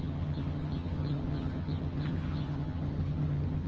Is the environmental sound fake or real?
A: fake